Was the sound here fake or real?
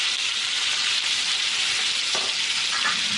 fake